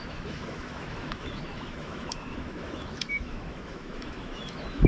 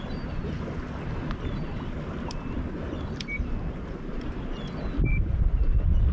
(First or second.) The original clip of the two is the second